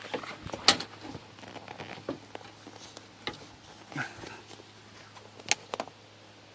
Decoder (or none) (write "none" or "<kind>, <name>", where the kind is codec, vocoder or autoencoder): none